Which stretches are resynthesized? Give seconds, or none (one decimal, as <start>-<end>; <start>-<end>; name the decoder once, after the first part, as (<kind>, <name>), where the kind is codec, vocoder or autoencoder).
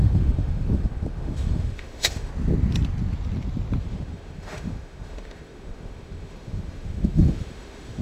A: 0.0-2.3 (autoencoder, DAC-VAE); 3.8-8.0